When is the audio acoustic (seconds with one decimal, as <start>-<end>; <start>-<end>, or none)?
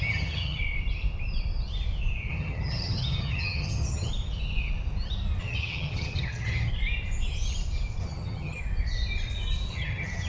0.6-2.3; 4.1-5.4; 6.7-8.0; 8.6-9.7